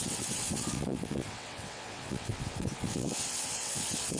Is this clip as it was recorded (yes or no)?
no